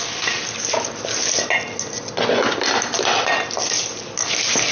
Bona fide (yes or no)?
yes